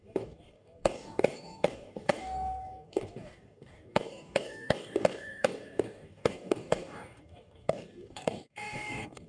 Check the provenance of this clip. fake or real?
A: fake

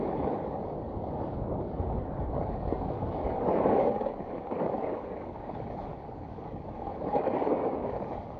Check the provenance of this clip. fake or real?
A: fake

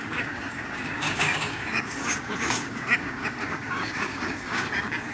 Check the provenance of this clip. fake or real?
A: fake